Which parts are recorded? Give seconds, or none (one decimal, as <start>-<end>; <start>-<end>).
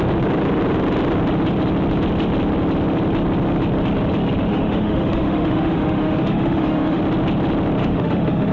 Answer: 0.0-4.5; 7.0-7.8